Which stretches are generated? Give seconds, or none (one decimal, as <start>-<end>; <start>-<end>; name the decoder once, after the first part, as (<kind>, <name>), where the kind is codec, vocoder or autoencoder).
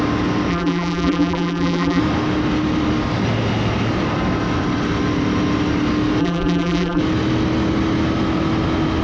0.5-2.0 (vocoder, BigVGAN v2); 6.2-7.0